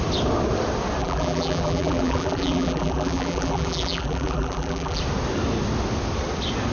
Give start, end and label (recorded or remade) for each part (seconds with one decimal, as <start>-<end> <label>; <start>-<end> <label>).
0.0-1.0 recorded; 1.0-5.0 remade; 5.0-6.7 recorded